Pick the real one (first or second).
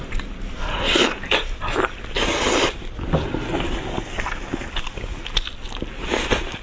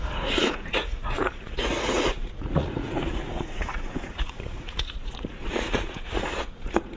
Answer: first